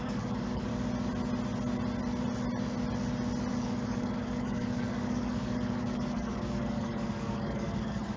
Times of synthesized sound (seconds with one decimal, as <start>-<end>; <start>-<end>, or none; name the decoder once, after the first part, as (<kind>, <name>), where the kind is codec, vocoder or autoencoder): 0.0-0.7 (codec, DAC); 3.5-8.2